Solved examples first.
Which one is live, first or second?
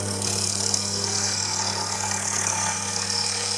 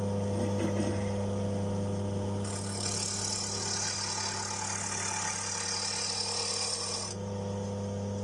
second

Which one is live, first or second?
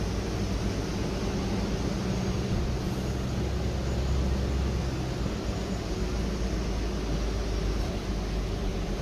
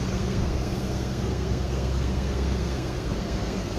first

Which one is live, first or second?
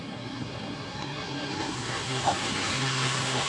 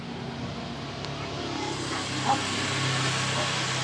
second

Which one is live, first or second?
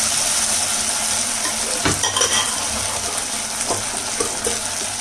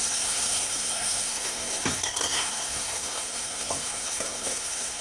first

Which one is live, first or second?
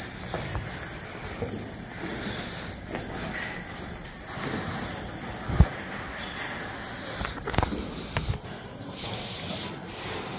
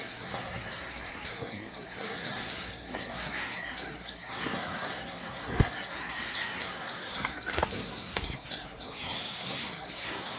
first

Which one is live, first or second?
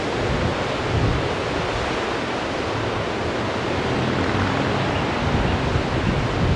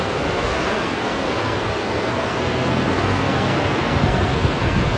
first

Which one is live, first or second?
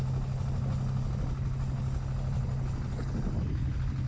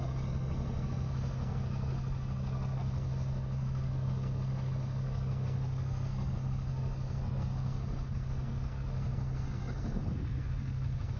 first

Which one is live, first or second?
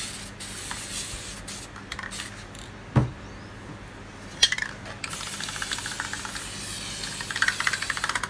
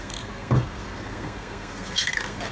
first